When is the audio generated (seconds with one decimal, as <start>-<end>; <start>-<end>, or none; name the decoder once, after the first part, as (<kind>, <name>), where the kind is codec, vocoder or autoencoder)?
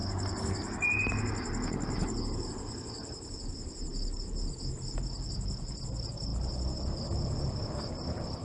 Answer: none